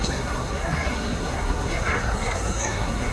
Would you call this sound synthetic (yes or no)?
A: yes